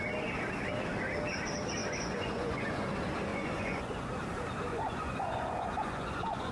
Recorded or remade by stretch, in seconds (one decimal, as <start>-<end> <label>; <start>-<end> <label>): 0.0-1.8 recorded; 1.8-2.8 remade; 2.8-3.3 recorded; 3.3-4.1 remade; 4.1-4.7 recorded; 4.7-6.5 remade